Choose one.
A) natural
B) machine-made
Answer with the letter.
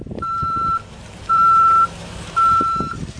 B